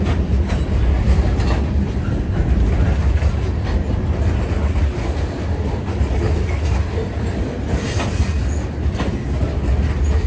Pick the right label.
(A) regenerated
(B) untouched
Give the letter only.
B